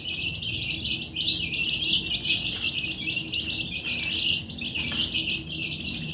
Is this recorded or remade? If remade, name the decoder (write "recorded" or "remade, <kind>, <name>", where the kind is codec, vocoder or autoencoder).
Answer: recorded